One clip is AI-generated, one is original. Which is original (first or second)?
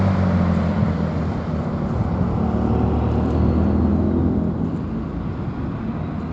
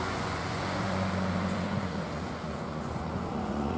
first